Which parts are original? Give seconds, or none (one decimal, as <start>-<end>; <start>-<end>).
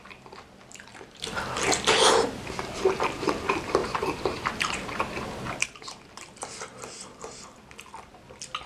0.0-3.8; 5.1-8.7